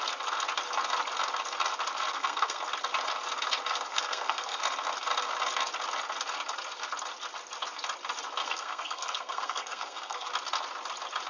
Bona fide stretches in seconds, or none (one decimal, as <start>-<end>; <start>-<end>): 0.0-2.1; 2.6-3.9; 4.6-8.4; 10.3-11.3